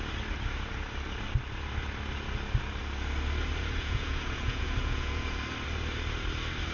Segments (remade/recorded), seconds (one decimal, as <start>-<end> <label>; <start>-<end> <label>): 0.0-3.6 recorded; 3.6-5.4 remade; 5.4-6.7 recorded